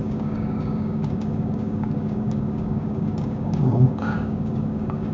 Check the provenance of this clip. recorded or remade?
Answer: remade